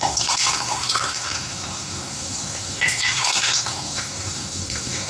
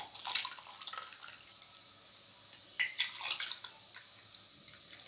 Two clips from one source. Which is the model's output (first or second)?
first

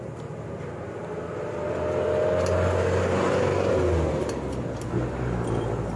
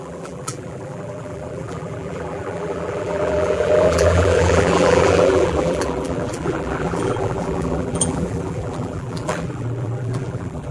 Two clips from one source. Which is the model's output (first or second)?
second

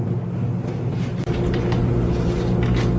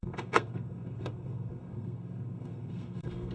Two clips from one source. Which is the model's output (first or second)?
second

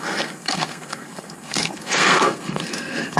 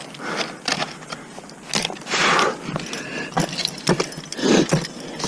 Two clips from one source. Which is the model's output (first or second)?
first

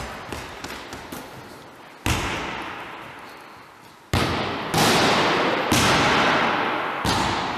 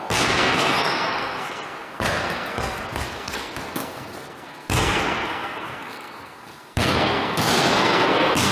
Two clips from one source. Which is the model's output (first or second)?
second